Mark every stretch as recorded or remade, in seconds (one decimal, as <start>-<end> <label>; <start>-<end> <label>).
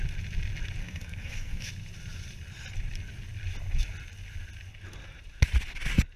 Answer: 0.0-0.8 recorded; 0.8-1.7 remade; 1.7-6.2 recorded